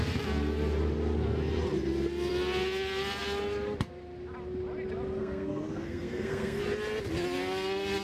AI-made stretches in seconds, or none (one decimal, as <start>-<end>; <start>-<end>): 5.2-6.6